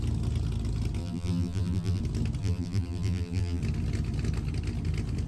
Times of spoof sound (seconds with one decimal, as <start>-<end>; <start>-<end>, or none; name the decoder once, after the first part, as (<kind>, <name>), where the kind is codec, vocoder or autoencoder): 1.0-2.0 (vocoder, BigVGAN v2); 2.4-3.6